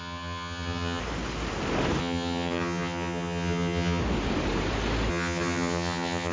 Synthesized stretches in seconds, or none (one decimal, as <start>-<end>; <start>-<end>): 0.0-1.0; 2.0-4.0; 5.1-6.3